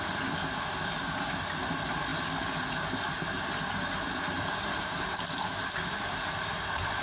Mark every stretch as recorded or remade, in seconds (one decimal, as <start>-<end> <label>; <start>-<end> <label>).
0.0-7.0 recorded